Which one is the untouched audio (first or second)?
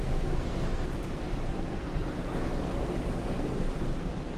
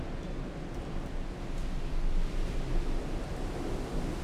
second